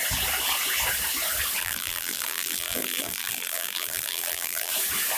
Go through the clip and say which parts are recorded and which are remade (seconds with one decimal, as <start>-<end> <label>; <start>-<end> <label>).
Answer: 0.0-1.6 recorded; 1.6-4.7 remade; 4.7-5.2 recorded